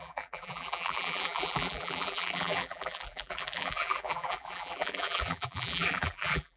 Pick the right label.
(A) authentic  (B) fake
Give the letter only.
B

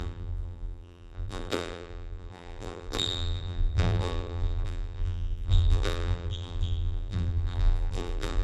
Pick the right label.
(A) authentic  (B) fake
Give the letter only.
B